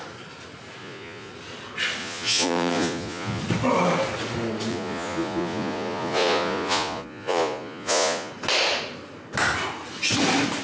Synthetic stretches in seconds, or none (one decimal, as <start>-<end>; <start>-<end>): 0.8-1.3; 2.0-3.4; 4.7-8.3